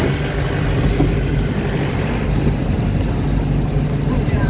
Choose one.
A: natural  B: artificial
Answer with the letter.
A